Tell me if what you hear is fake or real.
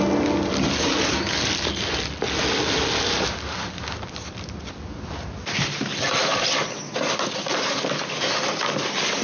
real